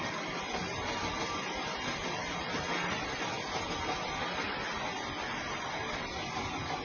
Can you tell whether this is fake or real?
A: real